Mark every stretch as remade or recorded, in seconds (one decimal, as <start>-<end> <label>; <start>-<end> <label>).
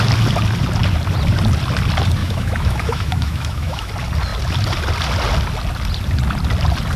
0.0-2.2 recorded; 2.2-3.9 remade; 3.9-7.0 recorded